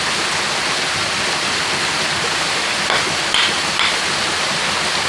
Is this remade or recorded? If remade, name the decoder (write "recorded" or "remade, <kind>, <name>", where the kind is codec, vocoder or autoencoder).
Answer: recorded